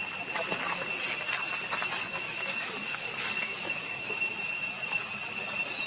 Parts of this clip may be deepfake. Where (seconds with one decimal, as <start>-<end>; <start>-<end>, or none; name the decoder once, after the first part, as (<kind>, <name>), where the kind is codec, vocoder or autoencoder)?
2.0-4.1 (codec, DAC)